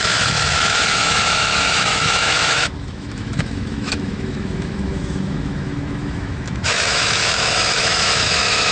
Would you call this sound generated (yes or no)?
yes